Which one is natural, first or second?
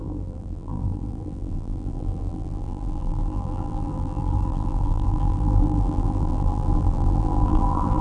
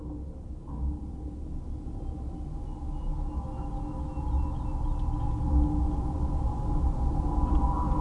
second